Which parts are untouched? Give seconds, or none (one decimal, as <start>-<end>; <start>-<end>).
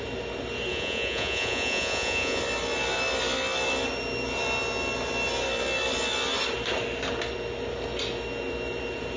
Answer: 0.0-0.7; 2.4-9.2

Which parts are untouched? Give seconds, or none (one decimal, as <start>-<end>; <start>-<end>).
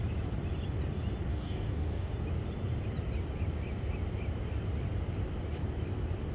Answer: 0.0-1.3; 2.1-6.3